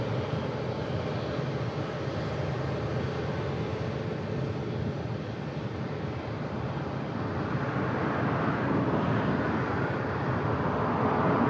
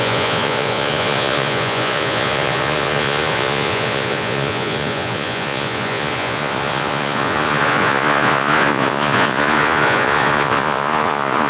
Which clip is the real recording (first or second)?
first